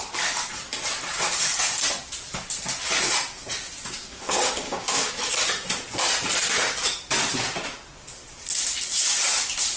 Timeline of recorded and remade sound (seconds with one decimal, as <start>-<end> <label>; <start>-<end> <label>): 0.0-4.0 recorded; 4.0-5.1 remade; 5.1-9.8 recorded

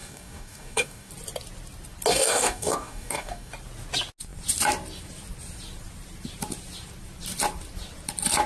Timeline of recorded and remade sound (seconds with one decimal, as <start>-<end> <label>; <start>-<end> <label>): 0.0-1.1 remade; 1.1-2.1 recorded; 2.1-3.5 remade; 3.5-8.5 recorded

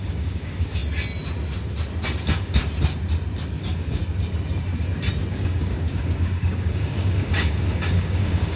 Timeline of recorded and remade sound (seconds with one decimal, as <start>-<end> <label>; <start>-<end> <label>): 0.0-0.8 remade; 0.8-2.2 recorded; 2.2-2.6 remade; 2.6-3.6 recorded; 3.6-4.0 remade; 4.0-5.3 recorded; 5.3-8.6 remade

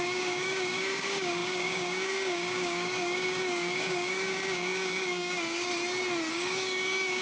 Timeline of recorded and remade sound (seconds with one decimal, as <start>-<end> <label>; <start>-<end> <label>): 0.0-5.7 remade; 5.7-6.3 recorded; 6.3-7.2 remade

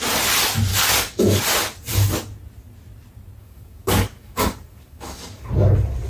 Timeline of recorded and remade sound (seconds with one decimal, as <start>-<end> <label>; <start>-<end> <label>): 0.0-0.7 recorded; 0.7-1.4 remade; 1.4-3.4 recorded; 3.4-5.5 remade; 5.5-6.1 recorded

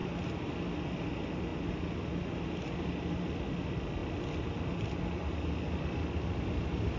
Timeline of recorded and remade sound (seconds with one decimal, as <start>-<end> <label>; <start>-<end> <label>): 0.0-7.0 recorded